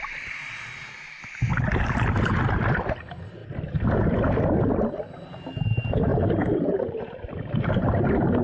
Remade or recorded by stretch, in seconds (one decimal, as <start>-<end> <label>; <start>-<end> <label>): 0.0-6.1 recorded; 6.1-7.0 remade; 7.0-8.4 recorded